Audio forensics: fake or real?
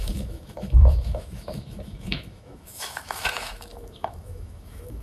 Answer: fake